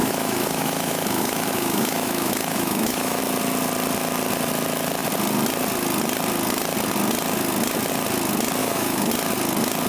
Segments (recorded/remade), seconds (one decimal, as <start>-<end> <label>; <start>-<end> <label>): 0.0-3.2 remade; 3.2-8.6 recorded; 8.6-9.1 remade; 9.1-9.9 recorded